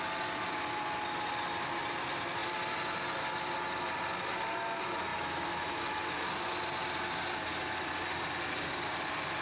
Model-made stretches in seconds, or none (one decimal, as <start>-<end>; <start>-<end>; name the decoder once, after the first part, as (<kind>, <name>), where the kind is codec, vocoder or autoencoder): none